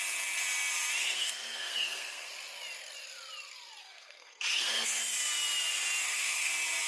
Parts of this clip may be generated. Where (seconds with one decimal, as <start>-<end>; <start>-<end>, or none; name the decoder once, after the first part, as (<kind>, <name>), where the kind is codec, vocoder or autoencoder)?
1.0-2.3 (codec, SNAC); 3.8-5.0; 6.0-6.5